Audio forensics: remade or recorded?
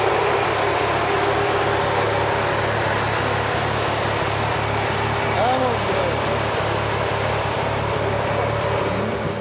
recorded